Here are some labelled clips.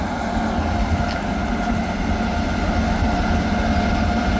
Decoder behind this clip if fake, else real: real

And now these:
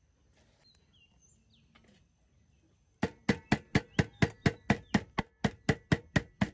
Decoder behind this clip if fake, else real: real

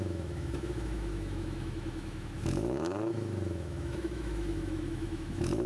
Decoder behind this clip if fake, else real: fake, autoencoder, DAC-VAE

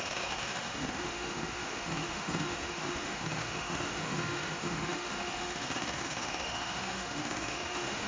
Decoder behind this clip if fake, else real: fake, autoencoder, DAC-VAE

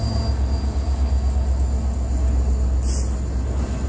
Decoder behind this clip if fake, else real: real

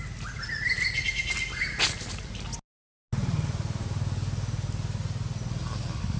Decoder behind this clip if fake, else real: real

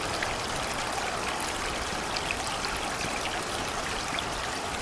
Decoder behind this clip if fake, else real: real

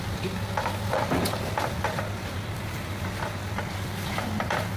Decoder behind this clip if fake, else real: real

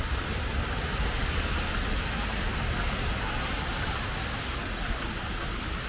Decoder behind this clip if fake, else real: real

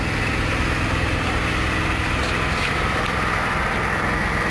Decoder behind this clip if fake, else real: real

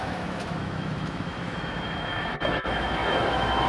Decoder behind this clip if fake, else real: fake, autoencoder, DAC-VAE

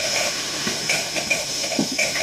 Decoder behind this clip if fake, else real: fake, autoencoder, DAC-VAE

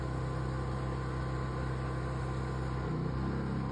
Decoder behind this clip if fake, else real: real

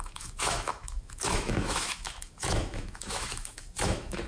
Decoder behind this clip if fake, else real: fake, autoencoder, DAC-VAE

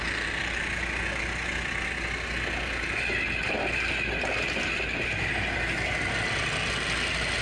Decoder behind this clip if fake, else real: real